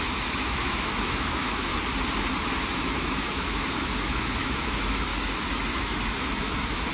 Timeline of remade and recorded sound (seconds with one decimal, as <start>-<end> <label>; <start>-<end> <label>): 0.0-1.7 remade; 1.7-2.8 recorded; 2.8-5.1 remade; 5.1-5.7 recorded; 5.7-6.9 remade